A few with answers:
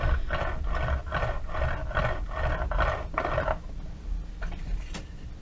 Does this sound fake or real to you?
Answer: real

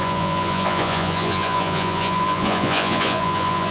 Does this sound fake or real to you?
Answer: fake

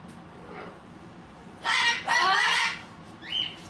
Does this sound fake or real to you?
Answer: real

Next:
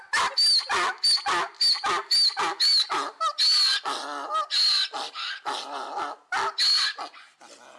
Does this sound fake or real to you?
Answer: real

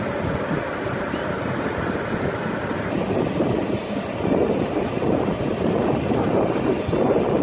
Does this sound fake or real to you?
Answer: real